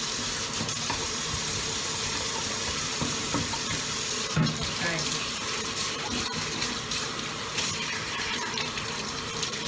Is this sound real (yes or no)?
no